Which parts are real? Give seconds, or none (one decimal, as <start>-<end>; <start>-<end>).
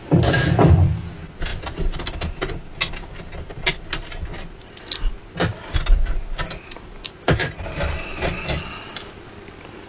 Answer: 0.0-9.9